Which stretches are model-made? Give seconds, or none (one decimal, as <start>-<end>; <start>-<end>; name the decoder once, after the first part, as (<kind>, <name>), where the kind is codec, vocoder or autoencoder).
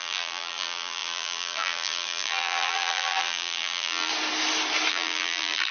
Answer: 0.0-4.1 (vocoder, BigVGAN v2); 4.9-5.7